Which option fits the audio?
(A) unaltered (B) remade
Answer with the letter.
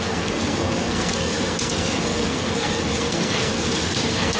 B